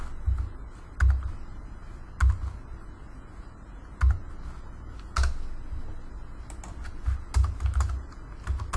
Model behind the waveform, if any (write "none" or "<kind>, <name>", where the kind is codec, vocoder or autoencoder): none